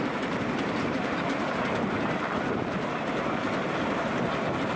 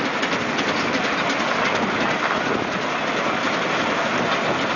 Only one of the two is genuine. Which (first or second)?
second